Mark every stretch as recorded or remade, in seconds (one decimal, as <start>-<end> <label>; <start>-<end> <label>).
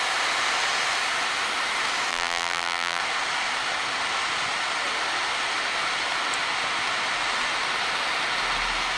0.0-2.1 recorded; 2.1-3.0 remade; 3.0-9.0 recorded